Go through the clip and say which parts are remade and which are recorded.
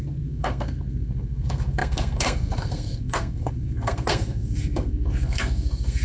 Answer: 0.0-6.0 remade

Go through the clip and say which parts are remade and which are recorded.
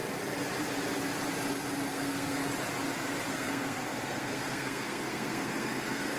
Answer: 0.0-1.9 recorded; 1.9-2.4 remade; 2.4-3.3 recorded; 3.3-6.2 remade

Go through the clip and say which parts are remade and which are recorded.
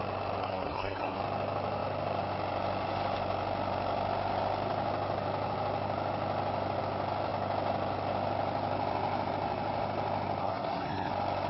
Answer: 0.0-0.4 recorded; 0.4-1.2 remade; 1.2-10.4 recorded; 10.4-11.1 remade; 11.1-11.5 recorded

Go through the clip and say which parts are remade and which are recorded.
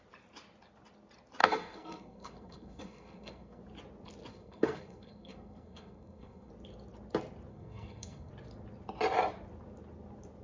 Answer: 0.0-1.4 recorded; 1.4-3.6 remade; 3.6-4.3 recorded; 4.3-6.5 remade; 6.5-7.5 recorded; 7.5-8.3 remade; 8.3-10.4 recorded